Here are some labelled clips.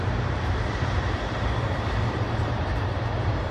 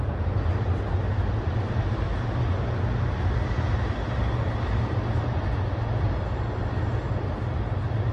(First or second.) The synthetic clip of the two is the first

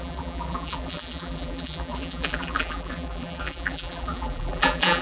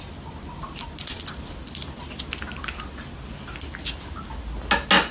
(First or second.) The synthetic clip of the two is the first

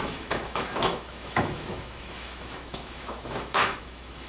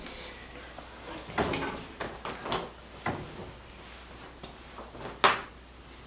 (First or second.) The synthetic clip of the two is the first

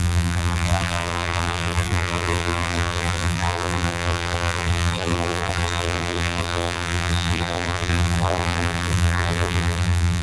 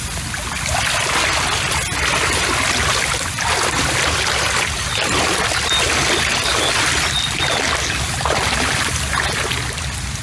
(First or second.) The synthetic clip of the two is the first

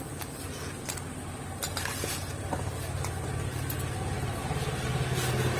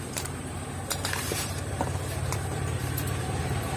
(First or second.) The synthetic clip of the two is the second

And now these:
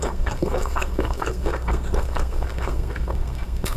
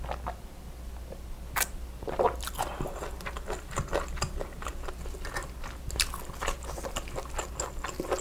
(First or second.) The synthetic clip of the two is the first